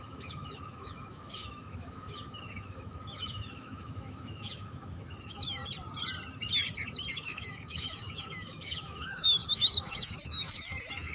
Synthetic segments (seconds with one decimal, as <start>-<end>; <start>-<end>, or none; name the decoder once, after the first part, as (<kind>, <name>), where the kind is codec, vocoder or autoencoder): 0.0-5.6 (autoencoder, DAC-VAE); 7.1-11.1